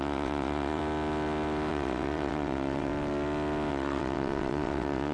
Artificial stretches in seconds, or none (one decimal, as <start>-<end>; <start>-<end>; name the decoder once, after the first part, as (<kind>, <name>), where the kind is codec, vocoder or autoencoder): 0.0-0.8 (vocoder, WaveNeXt); 1.7-2.9; 3.7-5.1